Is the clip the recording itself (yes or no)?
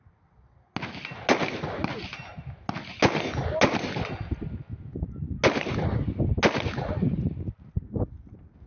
yes